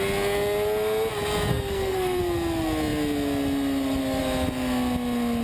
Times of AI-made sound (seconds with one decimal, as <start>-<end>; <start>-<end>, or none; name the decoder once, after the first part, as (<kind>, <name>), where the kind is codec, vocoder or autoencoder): 1.5-2.2 (codec, SNAC)